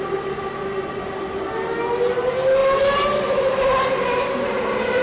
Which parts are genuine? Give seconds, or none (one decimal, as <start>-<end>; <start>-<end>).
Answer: 0.0-5.0